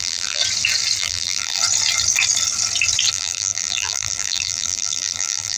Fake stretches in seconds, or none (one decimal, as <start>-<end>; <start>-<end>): 0.0-0.4; 1.0-1.6; 3.1-5.6